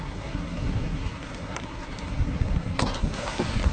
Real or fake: fake